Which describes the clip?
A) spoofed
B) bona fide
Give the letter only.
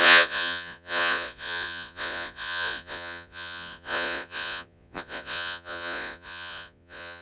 A